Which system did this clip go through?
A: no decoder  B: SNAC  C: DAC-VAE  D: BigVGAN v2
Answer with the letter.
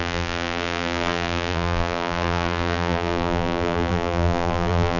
D